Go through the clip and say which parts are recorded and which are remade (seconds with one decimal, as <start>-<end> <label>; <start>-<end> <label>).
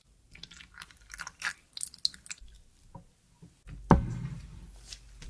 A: 0.0-5.3 recorded